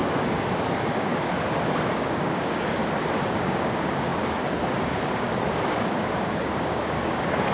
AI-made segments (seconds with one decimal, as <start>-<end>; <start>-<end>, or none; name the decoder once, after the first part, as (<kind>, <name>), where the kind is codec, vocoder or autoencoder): 0.0-2.8 (codec, DAC); 3.3-7.5

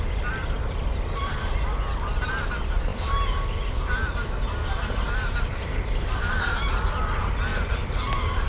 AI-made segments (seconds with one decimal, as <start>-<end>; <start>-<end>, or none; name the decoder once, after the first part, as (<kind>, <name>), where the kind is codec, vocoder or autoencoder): none

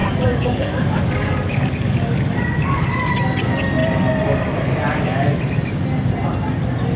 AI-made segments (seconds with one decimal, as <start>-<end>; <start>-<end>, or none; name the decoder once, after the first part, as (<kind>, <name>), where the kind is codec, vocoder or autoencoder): 0.0-3.1 (codec, DAC)

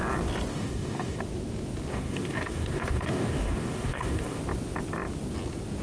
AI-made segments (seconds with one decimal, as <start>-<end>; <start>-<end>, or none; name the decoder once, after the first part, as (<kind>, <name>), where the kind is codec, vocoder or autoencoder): 0.5-1.2 (codec, DAC); 1.9-4.4

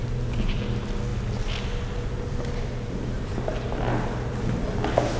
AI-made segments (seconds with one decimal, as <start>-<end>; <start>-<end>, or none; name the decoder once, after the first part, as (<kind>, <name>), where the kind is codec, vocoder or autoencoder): none

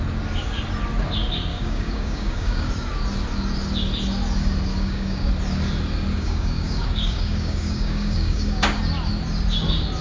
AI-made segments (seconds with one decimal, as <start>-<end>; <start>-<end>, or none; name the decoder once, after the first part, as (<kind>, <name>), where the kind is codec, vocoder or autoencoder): 1.5-2.7 (codec, DAC); 4.7-5.3; 6.1-8.8

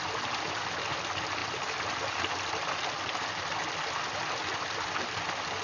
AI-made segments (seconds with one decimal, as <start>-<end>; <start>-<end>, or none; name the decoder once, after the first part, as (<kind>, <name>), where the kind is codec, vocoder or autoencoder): none